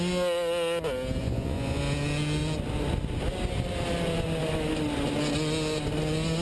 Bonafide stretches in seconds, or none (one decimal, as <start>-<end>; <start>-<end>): 0.0-1.2; 1.8-6.4